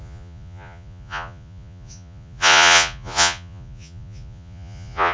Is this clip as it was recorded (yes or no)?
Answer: no